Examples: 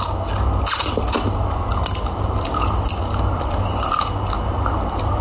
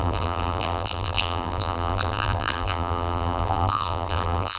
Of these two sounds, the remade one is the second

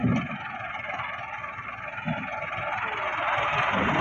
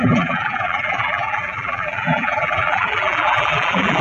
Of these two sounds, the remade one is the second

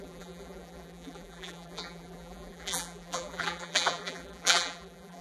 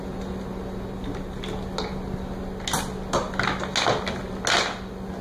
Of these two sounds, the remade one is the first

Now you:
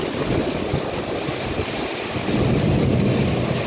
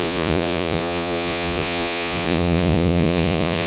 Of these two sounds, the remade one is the second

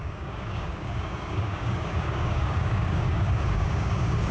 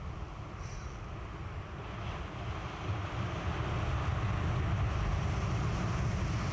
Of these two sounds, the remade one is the first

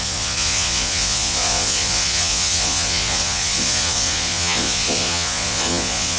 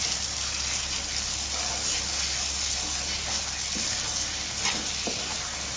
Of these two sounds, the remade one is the first